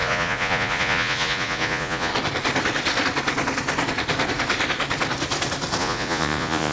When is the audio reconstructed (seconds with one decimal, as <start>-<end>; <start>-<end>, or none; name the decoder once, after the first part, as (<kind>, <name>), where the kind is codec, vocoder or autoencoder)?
0.0-2.1 (vocoder, Vocos); 5.8-6.7